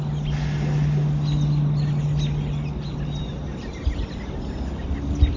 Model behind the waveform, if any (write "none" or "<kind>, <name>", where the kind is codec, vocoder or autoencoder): none